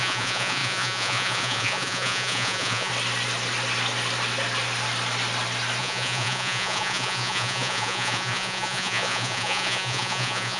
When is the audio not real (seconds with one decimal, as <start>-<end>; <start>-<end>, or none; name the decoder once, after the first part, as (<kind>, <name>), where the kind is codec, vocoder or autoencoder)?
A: 0.0-2.9 (vocoder, Vocos); 5.8-10.6